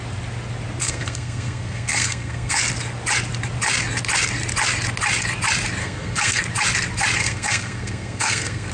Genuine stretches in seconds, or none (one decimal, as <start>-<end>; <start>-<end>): 0.0-0.8; 2.6-5.8; 6.4-7.2